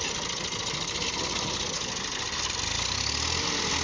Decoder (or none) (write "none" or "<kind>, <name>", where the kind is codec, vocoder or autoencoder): none